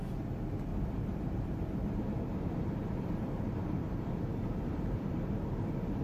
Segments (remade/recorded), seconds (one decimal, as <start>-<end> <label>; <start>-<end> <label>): 0.0-0.7 recorded; 0.7-4.3 remade; 4.3-4.7 recorded; 4.7-5.4 remade; 5.4-6.0 recorded